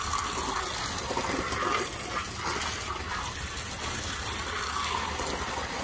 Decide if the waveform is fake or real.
real